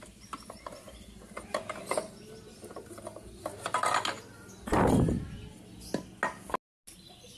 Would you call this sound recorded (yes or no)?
yes